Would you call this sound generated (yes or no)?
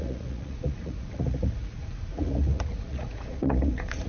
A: yes